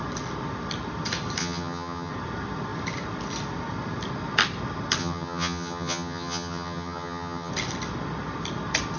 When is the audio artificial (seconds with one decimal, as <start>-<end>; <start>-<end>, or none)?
1.4-2.1; 5.0-7.5